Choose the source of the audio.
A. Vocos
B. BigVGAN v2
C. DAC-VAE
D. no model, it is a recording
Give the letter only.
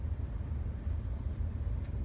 B